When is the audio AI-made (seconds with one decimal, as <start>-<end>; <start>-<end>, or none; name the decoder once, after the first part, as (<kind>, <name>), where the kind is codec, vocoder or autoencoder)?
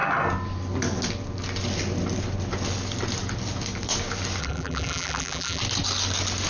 4.4-5.6 (vocoder, BigVGAN v2)